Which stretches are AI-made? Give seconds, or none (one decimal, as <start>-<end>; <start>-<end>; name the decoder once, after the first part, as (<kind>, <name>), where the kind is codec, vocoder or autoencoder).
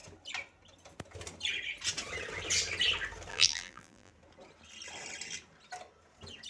3.3-4.1 (vocoder, BigVGAN v2)